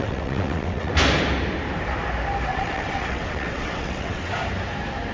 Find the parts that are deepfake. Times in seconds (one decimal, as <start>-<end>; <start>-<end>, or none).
0.0-0.9; 2.5-4.3